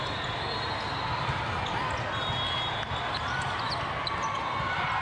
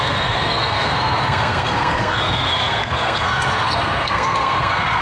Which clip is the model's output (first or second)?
second